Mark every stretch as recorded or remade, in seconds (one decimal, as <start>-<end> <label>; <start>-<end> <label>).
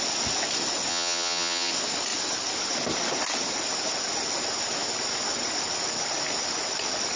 0.0-0.9 recorded; 0.9-1.7 remade; 1.7-7.2 recorded